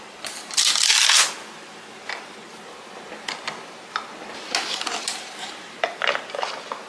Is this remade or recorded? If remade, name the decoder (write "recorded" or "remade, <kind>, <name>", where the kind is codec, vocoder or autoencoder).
recorded